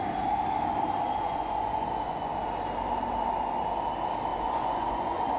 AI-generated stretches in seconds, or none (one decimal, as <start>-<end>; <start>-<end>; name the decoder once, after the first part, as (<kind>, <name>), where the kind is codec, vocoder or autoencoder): 1.1-2.3 (vocoder, Vocos); 4.3-5.4